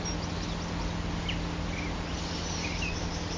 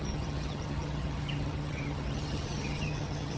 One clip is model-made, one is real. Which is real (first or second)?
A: first